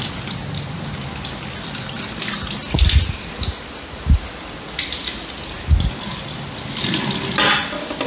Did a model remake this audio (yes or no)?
no